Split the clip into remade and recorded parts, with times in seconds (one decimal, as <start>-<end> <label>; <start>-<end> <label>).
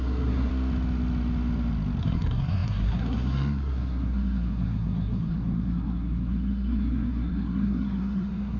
0.0-0.5 remade; 0.5-2.0 recorded; 2.0-8.6 remade